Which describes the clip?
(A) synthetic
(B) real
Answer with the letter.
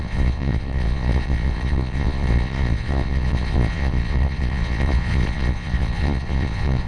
A